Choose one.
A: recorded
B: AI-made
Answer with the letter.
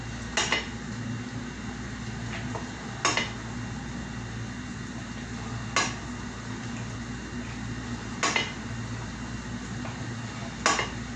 A